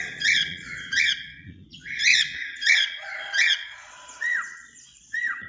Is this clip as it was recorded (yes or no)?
no